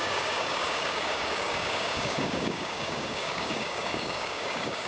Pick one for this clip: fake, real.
fake